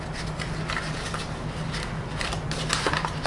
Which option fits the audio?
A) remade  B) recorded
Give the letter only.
B